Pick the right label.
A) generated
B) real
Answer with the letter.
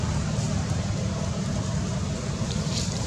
B